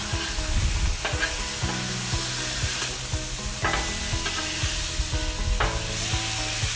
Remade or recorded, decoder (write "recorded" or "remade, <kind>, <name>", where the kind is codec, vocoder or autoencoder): recorded